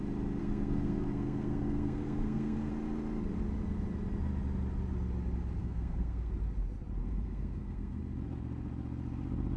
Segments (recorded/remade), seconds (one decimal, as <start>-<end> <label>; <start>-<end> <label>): 0.0-0.4 recorded; 0.4-2.7 remade; 2.7-5.6 recorded; 5.6-6.3 remade; 6.3-7.0 recorded; 7.0-8.0 remade; 8.0-9.6 recorded